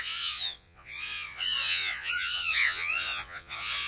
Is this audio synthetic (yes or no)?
yes